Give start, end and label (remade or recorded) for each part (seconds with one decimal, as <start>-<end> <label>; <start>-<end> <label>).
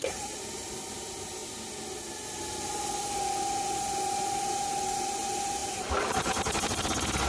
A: 0.0-1.4 remade; 1.4-4.5 recorded; 4.5-7.3 remade